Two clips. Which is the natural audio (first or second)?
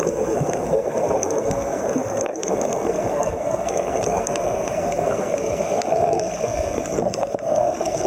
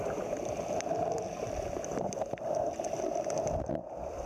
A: second